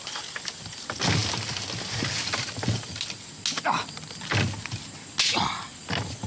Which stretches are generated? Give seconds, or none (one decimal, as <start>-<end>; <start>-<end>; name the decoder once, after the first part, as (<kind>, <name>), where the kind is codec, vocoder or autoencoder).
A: none